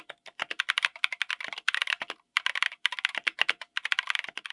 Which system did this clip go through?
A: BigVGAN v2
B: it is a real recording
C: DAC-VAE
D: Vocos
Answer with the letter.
B